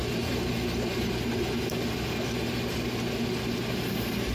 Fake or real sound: real